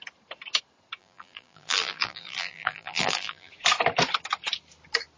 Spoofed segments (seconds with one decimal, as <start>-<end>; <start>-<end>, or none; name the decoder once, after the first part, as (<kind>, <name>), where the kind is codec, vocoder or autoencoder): 1.0-3.5 (vocoder, BigVGAN v2)